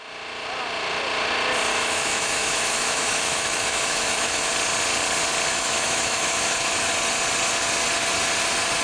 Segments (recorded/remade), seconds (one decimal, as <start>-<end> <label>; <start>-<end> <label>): 0.0-1.7 recorded; 1.7-4.5 remade; 4.5-5.5 recorded; 5.5-6.9 remade; 6.9-8.8 recorded